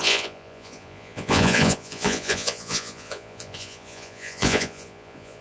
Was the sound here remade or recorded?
remade